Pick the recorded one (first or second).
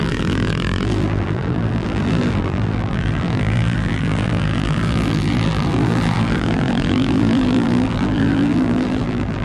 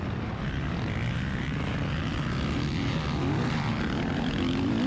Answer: second